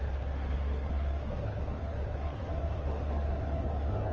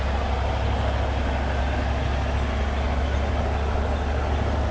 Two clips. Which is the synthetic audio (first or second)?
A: first